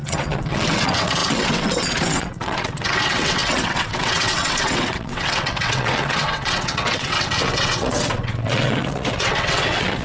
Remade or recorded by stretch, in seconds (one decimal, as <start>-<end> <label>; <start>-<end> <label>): 0.0-10.0 remade